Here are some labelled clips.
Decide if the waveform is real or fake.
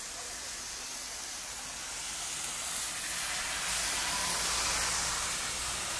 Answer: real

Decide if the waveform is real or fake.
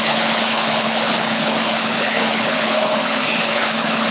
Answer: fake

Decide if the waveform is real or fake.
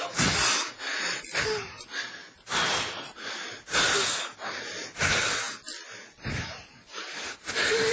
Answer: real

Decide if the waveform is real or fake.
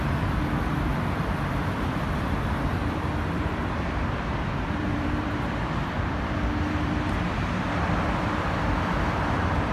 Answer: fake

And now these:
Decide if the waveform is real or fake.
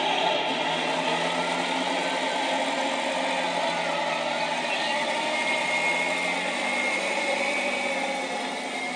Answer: real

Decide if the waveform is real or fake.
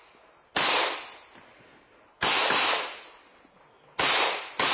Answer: real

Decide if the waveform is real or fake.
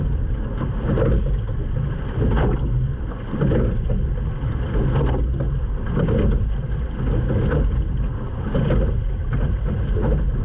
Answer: real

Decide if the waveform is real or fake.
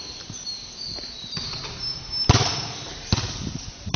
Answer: fake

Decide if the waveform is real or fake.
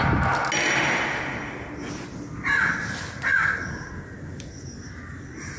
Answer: real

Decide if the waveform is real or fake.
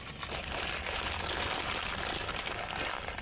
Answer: real